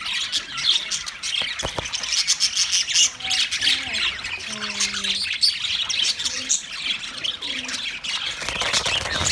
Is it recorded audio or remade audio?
recorded